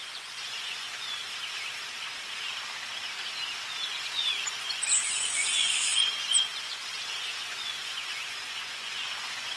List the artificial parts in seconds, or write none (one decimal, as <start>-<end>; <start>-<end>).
0.0-1.2; 3.9-9.6